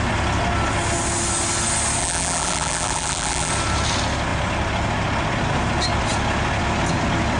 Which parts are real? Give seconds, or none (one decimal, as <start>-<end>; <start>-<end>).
0.0-2.0; 3.5-7.4